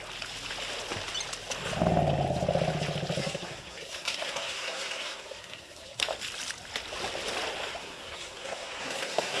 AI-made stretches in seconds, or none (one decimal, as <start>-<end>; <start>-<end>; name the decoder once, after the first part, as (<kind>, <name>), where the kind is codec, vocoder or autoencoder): 3.2-6.0 (codec, SNAC); 7.8-9.4